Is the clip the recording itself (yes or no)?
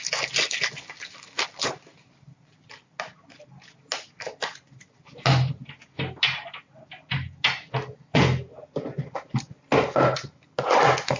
yes